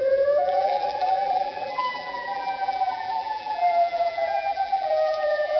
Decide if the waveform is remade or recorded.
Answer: remade